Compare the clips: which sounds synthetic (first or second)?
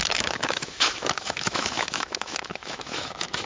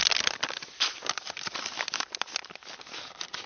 first